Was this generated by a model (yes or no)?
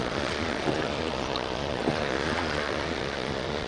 yes